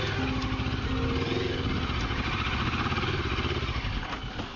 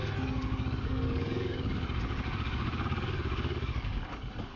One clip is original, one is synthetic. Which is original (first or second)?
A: first